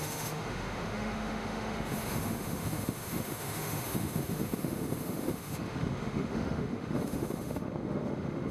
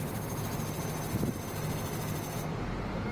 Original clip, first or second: second